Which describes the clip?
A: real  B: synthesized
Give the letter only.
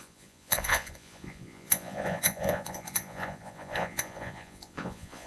B